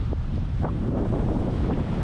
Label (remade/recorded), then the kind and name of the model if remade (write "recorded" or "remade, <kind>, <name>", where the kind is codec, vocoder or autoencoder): remade, vocoder, BigVGAN v2